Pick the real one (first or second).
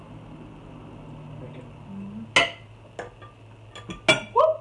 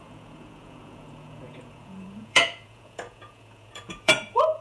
first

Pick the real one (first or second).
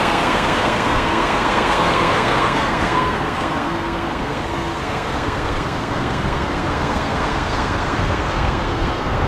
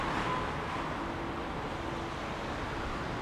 second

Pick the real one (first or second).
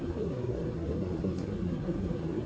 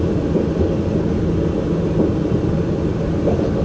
second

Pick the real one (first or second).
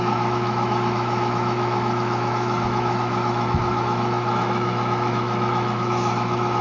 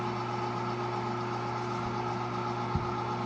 second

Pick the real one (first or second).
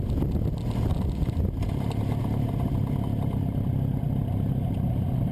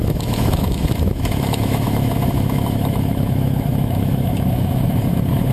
first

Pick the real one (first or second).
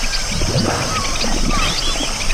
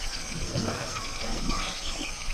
first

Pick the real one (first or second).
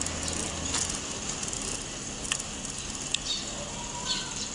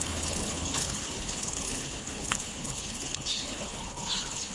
first